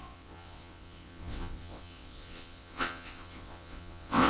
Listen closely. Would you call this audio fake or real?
fake